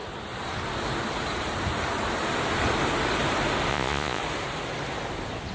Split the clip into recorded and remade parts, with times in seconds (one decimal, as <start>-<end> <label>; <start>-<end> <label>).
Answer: 0.0-3.7 recorded; 3.7-4.2 remade; 4.2-5.5 recorded